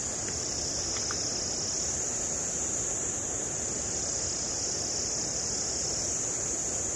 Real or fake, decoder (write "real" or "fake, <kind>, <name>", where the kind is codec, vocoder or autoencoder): real